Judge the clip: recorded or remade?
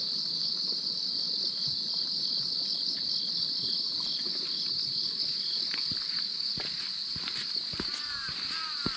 recorded